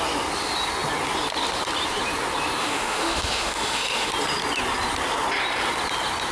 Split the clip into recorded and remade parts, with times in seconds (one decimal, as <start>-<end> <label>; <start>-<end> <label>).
0.0-2.6 recorded; 2.6-4.1 remade; 4.1-6.3 recorded